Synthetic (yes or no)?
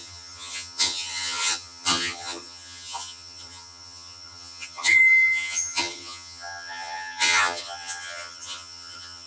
yes